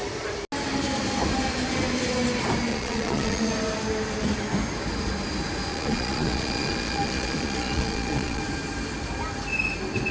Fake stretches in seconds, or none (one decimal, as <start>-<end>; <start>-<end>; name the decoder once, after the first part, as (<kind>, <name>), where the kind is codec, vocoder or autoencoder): 2.7-3.5 (vocoder, Vocos); 5.7-8.4